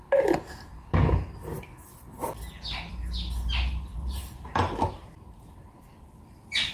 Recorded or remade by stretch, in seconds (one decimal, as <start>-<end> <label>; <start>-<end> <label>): 0.0-3.9 recorded; 3.9-4.5 remade; 4.5-6.7 recorded